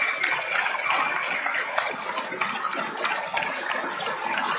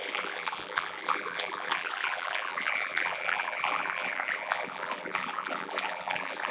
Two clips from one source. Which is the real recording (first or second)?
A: first